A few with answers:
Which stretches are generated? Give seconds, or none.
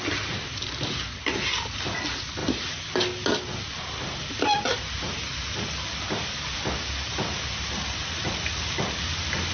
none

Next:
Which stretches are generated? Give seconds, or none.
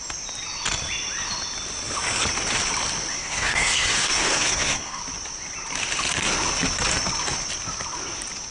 3.1-5.0 (codec, SNAC)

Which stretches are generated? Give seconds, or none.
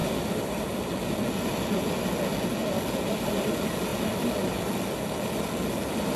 0.0-0.9 (vocoder, BigVGAN v2); 1.5-2.1; 2.6-3.3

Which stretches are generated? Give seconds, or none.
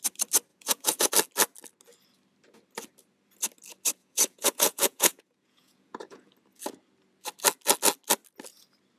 0.5-1.1 (vocoder, Vocos); 4.0-6.3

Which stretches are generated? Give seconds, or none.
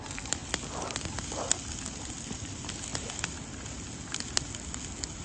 none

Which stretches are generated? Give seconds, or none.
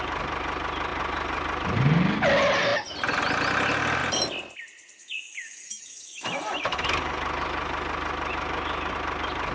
5.0-6.4 (autoencoder, DAC-VAE)